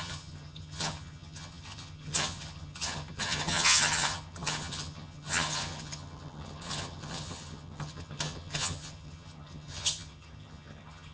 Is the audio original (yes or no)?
no